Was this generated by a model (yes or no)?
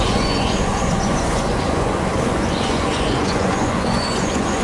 yes